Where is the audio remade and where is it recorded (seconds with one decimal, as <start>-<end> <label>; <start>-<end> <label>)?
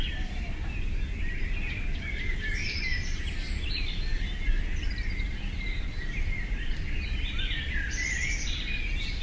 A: 0.0-9.2 recorded